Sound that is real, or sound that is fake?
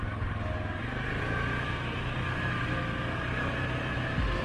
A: real